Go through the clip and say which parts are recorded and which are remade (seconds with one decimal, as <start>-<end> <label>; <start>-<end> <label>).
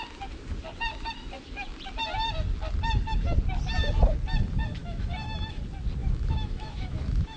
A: 0.0-4.8 recorded; 4.8-5.6 remade; 5.6-6.0 recorded; 6.0-7.4 remade